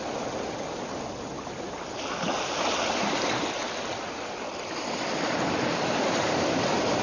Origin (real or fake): real